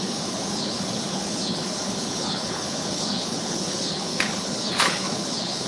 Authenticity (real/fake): fake